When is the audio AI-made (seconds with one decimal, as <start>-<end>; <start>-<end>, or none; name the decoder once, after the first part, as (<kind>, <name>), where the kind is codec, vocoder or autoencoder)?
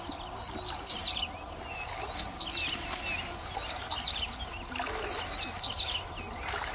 none